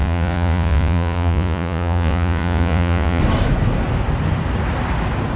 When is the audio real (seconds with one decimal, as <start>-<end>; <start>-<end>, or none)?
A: 3.2-5.4